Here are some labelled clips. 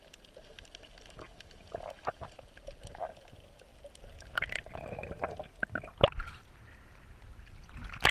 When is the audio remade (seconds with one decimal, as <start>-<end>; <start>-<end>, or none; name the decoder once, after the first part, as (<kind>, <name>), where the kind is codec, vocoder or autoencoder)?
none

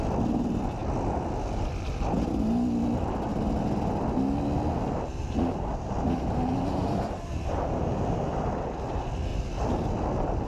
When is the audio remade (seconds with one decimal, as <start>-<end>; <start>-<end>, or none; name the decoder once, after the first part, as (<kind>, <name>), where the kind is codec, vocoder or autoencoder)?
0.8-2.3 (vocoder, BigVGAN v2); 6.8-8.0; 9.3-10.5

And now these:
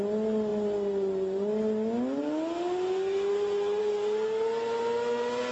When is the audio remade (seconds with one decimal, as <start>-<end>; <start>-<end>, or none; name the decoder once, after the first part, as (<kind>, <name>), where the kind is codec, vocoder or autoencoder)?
none

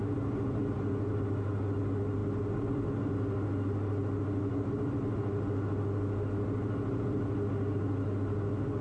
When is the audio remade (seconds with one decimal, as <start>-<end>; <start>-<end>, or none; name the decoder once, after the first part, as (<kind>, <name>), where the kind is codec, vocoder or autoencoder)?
none